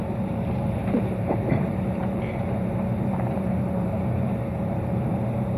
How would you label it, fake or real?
fake